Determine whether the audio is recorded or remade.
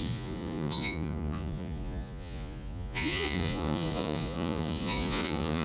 remade